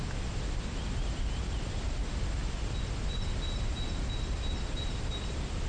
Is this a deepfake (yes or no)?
no